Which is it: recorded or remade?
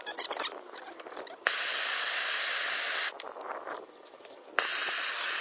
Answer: recorded